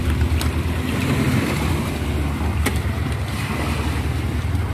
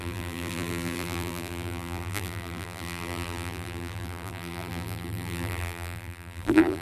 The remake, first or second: second